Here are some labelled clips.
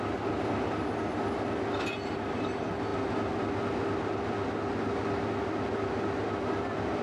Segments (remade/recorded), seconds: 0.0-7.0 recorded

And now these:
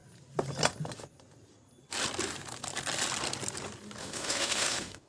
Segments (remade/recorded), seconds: 0.0-4.0 recorded; 4.0-5.1 remade

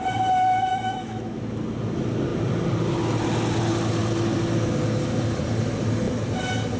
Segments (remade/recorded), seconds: 0.0-0.7 recorded; 0.7-1.4 remade; 1.4-6.8 recorded

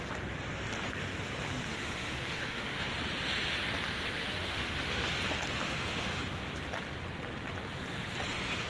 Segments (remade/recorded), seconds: 0.0-1.7 recorded; 1.7-2.9 remade; 2.9-4.4 recorded; 4.4-5.0 remade; 5.0-5.6 recorded; 5.6-6.2 remade; 6.2-8.7 recorded

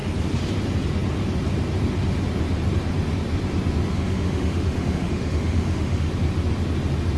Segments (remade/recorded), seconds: 0.0-3.9 recorded; 3.9-6.1 remade; 6.1-7.2 recorded

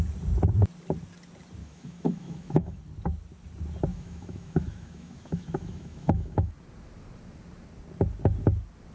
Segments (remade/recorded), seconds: 0.0-1.6 recorded; 1.6-2.8 remade; 2.8-3.9 recorded; 3.9-6.5 remade; 6.5-8.9 recorded